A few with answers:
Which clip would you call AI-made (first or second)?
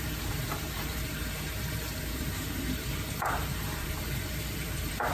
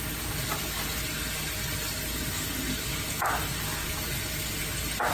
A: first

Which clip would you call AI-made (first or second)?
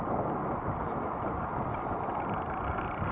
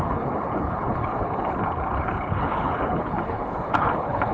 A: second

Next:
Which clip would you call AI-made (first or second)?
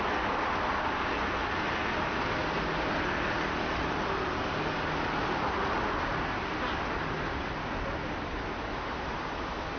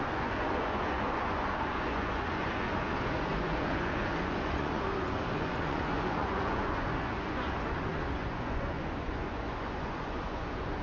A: second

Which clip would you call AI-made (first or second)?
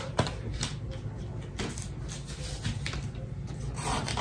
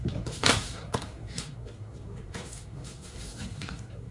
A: second